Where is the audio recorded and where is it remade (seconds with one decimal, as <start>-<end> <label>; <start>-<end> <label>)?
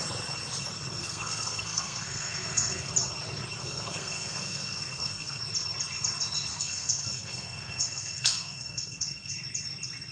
0.0-1.0 recorded; 1.0-2.9 remade; 2.9-3.6 recorded; 3.6-5.4 remade; 5.4-6.5 recorded; 6.5-9.3 remade; 9.3-10.1 recorded